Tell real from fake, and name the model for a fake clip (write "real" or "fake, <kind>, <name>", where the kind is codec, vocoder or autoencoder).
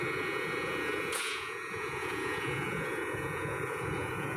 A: fake, vocoder, Vocos